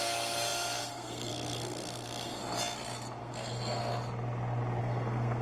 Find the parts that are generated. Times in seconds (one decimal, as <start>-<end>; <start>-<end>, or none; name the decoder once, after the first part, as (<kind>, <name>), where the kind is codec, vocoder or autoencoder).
0.0-2.4 (codec, SNAC); 3.2-3.8; 4.8-5.4